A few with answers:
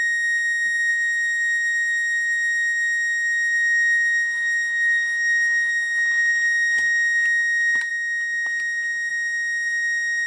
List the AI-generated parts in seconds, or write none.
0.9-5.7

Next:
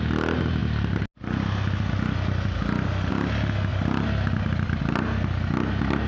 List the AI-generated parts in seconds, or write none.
3.7-4.8

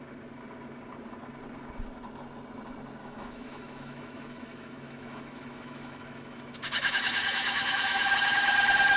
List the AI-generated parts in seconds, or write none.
3.0-8.1

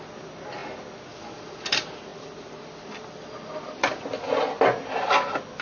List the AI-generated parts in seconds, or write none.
2.1-4.2

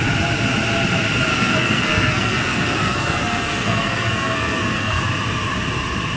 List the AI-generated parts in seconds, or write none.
1.3-5.0

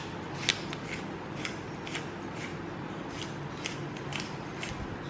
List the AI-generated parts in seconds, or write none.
2.5-3.1

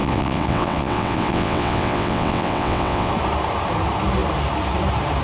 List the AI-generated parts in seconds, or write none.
0.0-3.1